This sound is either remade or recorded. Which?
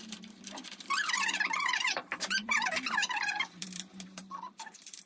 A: remade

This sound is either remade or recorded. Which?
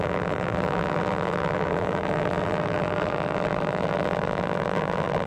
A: remade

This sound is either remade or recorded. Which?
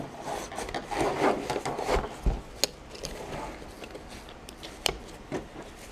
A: recorded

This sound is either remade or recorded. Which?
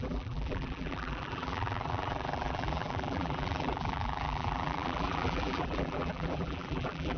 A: remade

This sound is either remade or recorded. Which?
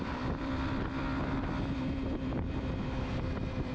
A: remade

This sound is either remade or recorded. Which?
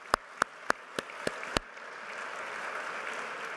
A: recorded